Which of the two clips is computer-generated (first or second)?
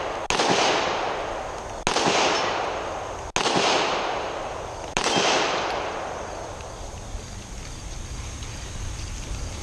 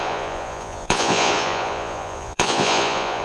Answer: second